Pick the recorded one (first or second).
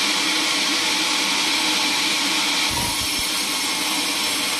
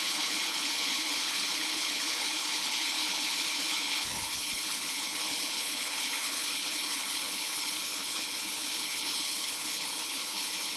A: first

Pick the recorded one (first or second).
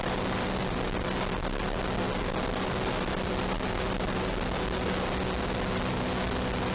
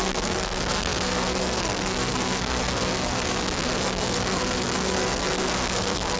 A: first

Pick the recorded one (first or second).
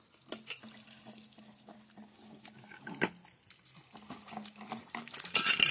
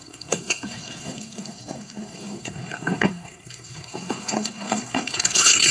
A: first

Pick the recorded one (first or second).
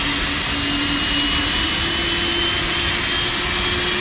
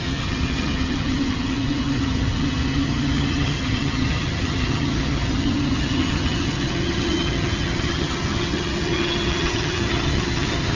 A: first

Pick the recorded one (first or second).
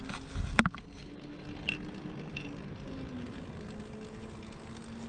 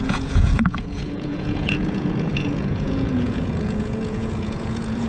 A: first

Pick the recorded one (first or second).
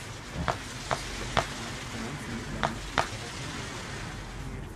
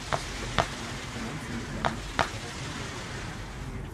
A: first